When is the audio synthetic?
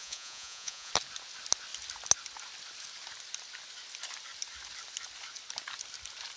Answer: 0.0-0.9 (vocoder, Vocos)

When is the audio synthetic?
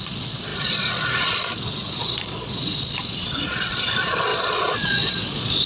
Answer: 0.0-5.7 (vocoder, Vocos)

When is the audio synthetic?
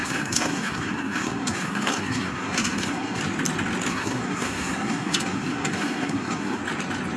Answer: 0.0-3.2 (codec, SNAC); 3.9-6.6